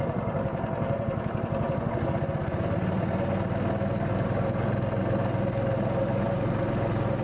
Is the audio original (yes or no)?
yes